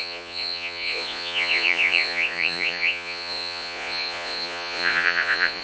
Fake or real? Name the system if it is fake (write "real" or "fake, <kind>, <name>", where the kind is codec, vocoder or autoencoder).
fake, vocoder, Vocos